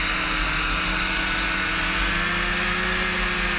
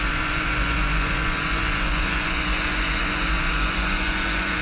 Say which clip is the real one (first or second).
first